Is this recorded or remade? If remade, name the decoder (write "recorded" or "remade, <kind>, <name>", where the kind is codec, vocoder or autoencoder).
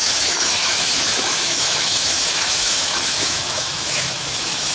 remade, autoencoder, DAC-VAE